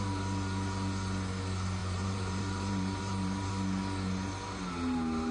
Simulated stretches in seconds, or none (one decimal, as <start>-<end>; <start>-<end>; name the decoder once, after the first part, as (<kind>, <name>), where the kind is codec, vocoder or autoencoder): 1.8-3.5 (vocoder, BigVGAN v2)